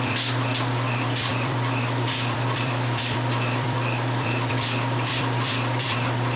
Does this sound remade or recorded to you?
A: remade